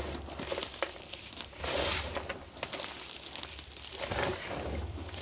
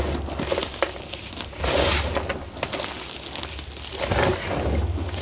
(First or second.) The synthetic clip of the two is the first